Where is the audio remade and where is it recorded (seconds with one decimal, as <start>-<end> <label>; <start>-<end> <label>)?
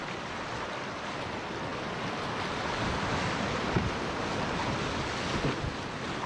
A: 0.0-6.3 recorded